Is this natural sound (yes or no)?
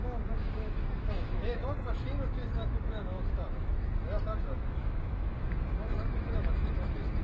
no